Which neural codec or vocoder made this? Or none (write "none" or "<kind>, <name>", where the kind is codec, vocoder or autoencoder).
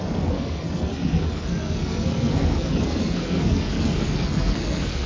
codec, SNAC